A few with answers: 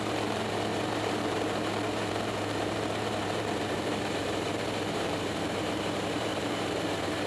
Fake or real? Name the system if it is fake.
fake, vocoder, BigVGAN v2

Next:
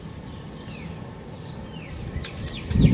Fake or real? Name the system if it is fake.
real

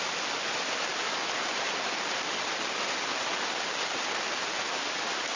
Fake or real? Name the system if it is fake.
real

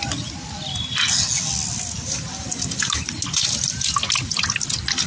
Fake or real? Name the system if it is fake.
real